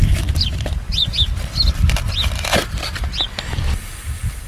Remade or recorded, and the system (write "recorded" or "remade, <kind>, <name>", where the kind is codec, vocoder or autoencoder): recorded